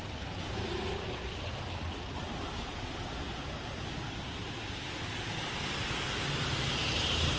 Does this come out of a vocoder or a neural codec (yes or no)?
no